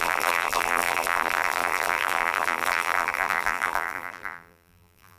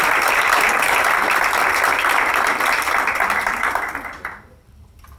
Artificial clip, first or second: first